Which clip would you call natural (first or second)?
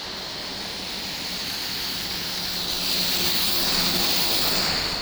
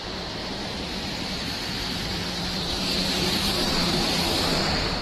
first